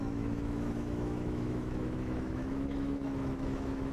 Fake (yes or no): yes